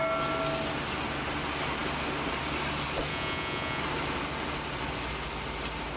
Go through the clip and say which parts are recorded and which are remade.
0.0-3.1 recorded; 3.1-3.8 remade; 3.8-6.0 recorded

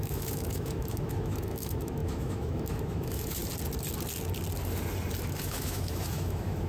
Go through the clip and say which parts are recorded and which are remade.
0.0-3.4 remade; 3.4-5.2 recorded; 5.2-6.7 remade